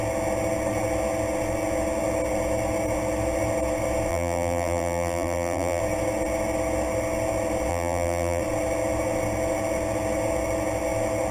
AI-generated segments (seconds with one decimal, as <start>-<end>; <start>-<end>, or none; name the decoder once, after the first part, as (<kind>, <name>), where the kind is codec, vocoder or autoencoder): 4.1-5.8 (vocoder, BigVGAN v2); 7.7-8.4